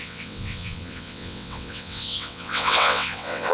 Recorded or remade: remade